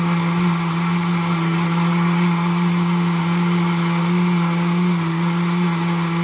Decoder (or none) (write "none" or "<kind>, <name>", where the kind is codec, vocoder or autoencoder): none